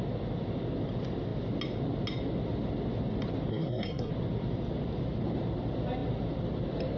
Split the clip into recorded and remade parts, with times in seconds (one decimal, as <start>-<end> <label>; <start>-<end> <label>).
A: 0.0-3.5 recorded; 3.5-4.1 remade; 4.1-7.0 recorded